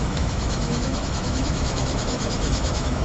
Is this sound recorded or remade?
remade